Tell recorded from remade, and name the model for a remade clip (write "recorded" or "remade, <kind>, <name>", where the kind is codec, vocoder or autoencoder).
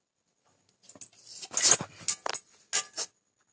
recorded